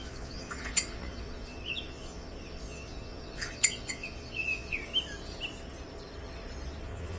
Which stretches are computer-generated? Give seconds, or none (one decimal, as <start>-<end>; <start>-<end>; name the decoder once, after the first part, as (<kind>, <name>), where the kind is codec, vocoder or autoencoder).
0.0-4.9 (vocoder, Vocos); 6.8-7.2